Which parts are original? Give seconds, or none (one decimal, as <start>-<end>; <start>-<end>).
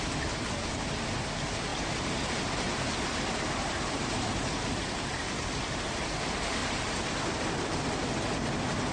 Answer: 0.0-8.9